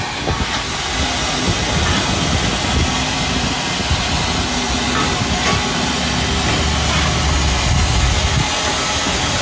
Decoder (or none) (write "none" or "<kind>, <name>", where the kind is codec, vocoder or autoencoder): none